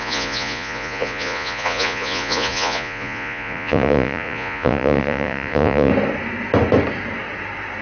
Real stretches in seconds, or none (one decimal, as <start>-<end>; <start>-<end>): 5.9-7.8